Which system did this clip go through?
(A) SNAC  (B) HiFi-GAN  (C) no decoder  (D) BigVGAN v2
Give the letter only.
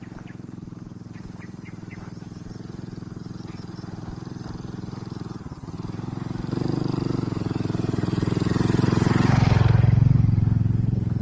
D